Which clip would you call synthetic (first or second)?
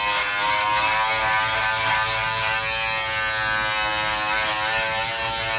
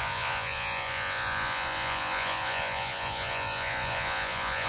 second